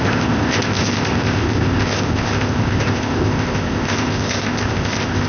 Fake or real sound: fake